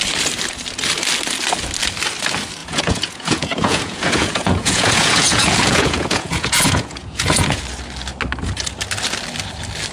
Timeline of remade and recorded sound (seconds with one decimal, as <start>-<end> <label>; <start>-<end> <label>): 0.0-2.6 recorded; 2.6-7.6 remade; 7.6-9.9 recorded